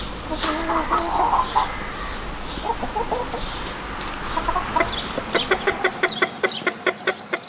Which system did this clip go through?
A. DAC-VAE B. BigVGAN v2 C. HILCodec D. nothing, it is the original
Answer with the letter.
D